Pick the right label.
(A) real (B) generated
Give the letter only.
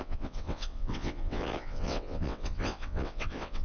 B